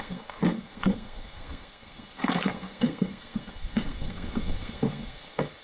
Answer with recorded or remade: remade